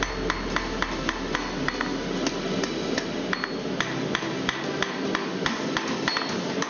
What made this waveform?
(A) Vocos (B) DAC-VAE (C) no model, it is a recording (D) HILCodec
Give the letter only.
C